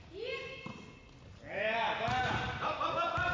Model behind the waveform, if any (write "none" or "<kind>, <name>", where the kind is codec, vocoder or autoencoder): none